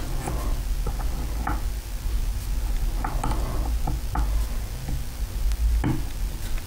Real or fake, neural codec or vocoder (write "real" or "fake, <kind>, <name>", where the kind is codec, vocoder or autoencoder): real